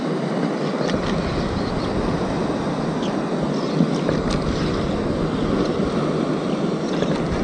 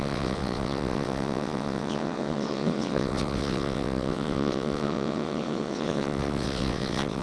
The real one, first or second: first